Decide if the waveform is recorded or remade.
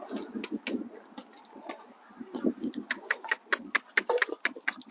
recorded